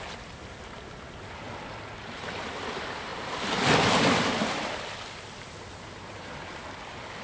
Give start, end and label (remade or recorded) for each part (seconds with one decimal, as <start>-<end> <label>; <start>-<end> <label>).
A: 0.0-7.2 recorded